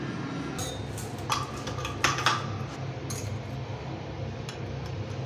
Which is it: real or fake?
real